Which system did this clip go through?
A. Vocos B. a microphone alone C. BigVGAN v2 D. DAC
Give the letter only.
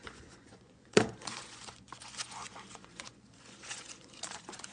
A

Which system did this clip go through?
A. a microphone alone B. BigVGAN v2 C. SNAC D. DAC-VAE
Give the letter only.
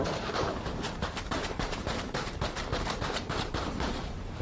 B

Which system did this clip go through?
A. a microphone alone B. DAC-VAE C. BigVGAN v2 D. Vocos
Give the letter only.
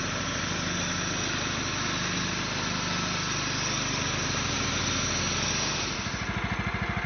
A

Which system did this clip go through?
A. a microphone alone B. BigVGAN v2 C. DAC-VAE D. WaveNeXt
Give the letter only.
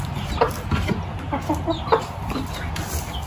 A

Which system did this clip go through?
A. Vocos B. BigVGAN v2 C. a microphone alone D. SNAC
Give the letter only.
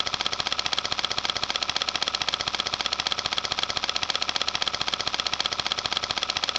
C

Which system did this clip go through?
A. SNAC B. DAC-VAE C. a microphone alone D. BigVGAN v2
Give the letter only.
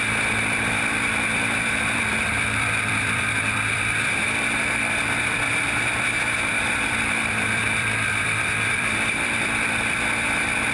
D